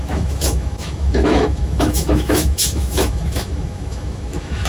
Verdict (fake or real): fake